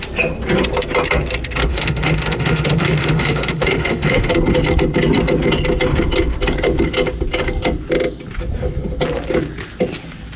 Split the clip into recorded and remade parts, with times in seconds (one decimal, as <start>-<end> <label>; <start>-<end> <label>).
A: 0.0-1.7 recorded; 1.7-4.3 remade; 4.3-10.4 recorded